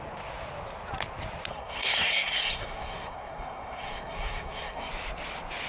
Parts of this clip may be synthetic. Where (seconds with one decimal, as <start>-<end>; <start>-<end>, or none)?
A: 1.5-4.9